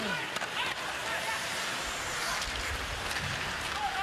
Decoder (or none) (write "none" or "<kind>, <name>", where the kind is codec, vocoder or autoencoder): none